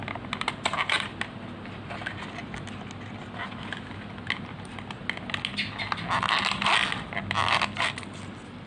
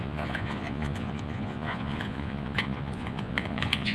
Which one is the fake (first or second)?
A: second